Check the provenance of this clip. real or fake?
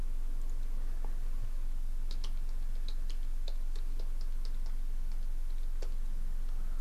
real